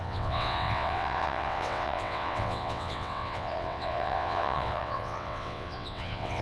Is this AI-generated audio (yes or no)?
yes